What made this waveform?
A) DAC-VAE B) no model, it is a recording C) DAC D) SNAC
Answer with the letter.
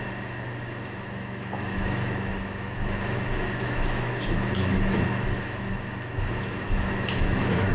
A